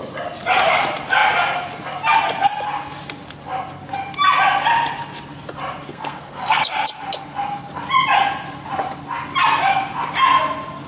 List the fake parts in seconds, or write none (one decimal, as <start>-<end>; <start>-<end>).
5.9-6.6